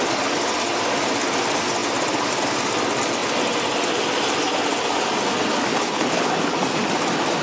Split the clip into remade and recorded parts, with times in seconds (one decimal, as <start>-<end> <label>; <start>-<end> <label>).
0.0-5.7 recorded; 5.7-6.3 remade; 6.3-7.4 recorded